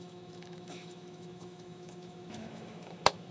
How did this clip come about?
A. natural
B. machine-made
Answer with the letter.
B